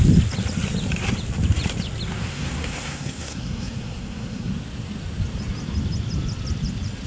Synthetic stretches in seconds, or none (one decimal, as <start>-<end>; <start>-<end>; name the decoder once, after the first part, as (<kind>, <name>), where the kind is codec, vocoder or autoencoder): 2.2-4.5 (codec, SNAC)